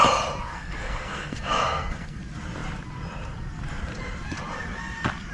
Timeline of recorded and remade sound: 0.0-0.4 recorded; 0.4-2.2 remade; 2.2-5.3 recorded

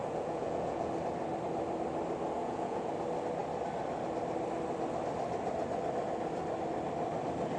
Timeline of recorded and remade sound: 0.0-0.9 remade; 0.9-2.4 recorded; 2.4-2.9 remade; 2.9-7.6 recorded

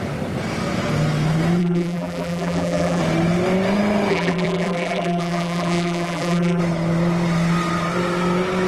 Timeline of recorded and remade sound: 0.0-1.6 recorded; 1.6-3.0 remade; 3.0-4.1 recorded; 4.1-6.6 remade; 6.6-8.7 recorded

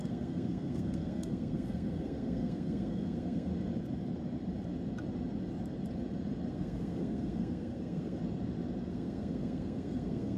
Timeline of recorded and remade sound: 0.0-3.5 remade; 3.5-6.5 recorded; 6.5-8.2 remade; 8.2-8.9 recorded; 8.9-10.4 remade

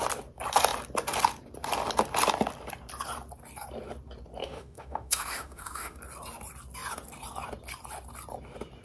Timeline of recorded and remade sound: 0.0-4.4 recorded; 4.4-6.0 remade; 6.0-8.8 recorded

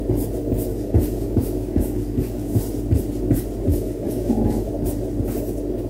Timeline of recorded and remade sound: 0.0-0.7 recorded; 0.7-2.6 remade; 2.6-3.7 recorded; 3.7-4.7 remade; 4.7-5.9 recorded

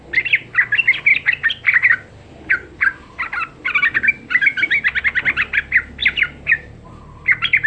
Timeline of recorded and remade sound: 0.0-6.0 recorded; 6.0-6.9 remade; 6.9-7.7 recorded